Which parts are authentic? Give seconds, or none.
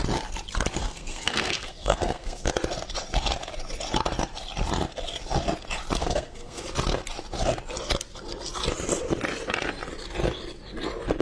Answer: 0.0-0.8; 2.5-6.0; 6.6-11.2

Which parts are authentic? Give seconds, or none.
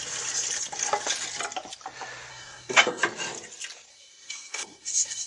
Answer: 0.0-2.3; 3.0-3.9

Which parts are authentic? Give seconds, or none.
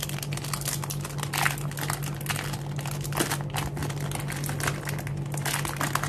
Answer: 0.0-6.1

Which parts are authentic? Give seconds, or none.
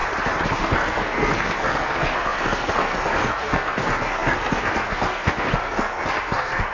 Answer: 0.0-0.6